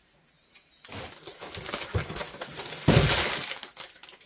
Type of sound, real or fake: real